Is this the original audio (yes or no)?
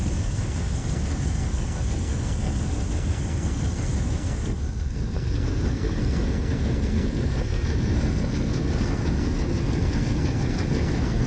no